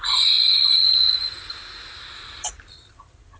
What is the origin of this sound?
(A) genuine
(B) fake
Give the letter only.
B